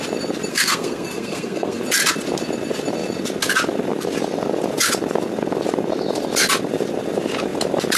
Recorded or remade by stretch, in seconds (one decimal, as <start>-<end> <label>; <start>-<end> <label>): 0.0-0.5 recorded; 0.5-1.8 remade; 1.8-8.0 recorded